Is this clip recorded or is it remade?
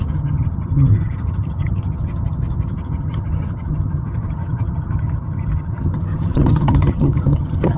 remade